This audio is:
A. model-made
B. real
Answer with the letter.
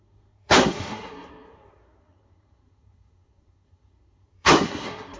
A